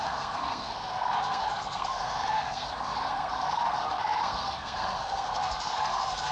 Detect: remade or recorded remade